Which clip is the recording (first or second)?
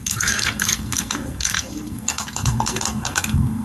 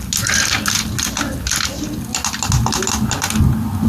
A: second